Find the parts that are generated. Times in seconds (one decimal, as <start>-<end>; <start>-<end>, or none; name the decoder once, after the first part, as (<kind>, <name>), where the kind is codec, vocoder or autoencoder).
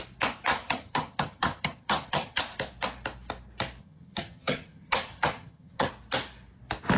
0.5-2.4 (vocoder, HiFi-GAN); 3.8-5.9